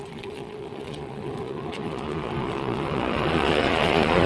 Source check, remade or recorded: remade